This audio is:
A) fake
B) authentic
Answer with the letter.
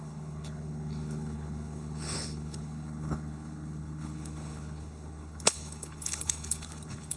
A